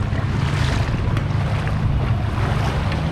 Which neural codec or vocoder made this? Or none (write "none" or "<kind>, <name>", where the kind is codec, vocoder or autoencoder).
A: none